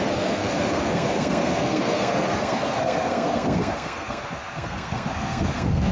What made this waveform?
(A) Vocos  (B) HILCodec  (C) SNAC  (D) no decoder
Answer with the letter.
C